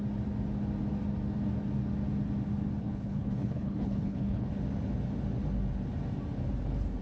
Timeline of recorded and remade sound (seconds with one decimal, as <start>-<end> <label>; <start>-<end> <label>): 0.0-2.8 recorded; 2.8-4.5 remade; 4.5-7.0 recorded